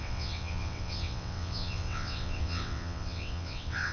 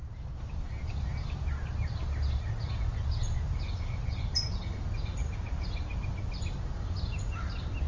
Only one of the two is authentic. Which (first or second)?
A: second